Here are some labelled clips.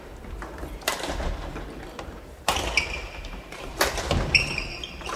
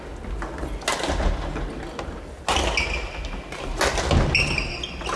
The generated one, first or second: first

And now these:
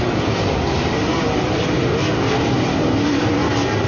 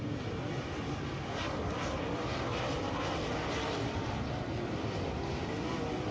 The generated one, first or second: first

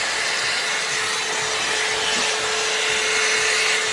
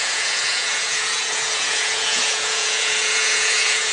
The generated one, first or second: second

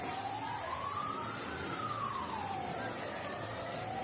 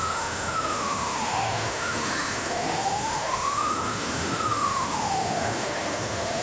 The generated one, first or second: second